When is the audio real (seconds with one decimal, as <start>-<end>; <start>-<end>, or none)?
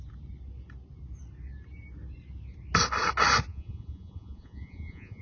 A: 0.0-3.5